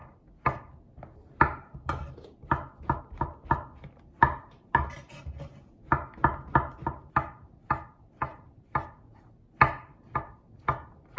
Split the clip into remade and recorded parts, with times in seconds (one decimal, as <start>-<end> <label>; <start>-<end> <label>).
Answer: 0.0-11.2 recorded